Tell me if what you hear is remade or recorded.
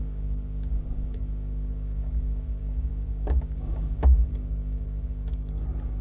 remade